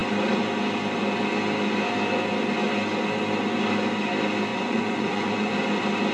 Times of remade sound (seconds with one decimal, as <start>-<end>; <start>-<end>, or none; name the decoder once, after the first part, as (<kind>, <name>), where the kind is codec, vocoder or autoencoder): 4.5-5.5 (vocoder, Vocos)